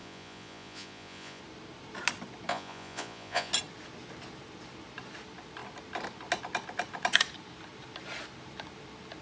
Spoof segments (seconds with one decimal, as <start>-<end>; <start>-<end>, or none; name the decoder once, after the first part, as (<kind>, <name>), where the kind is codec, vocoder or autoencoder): 0.0-1.4 (vocoder, Vocos); 2.5-3.5